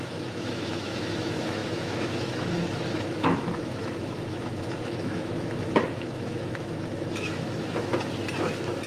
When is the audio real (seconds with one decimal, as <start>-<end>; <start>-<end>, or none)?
7.9-8.4